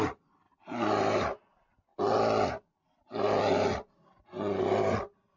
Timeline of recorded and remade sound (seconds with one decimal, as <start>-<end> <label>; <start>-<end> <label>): 0.0-5.4 recorded